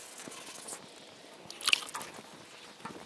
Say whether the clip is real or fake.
real